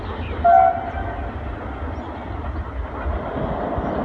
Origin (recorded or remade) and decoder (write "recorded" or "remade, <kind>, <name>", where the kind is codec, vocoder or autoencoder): recorded